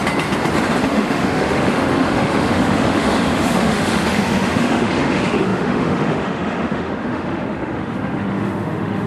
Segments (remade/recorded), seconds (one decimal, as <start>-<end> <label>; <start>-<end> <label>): 0.0-0.8 recorded; 0.8-9.1 remade